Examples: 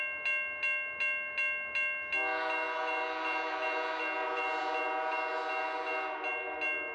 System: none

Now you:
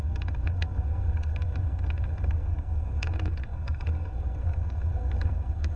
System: codec, SNAC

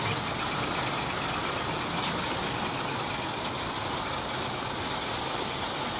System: none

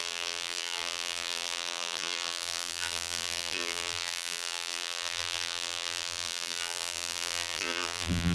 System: vocoder, BigVGAN v2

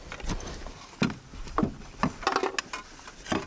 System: none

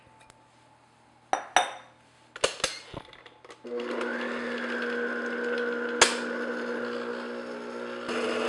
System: none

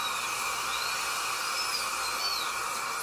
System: none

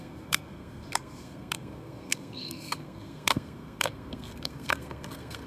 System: codec, SNAC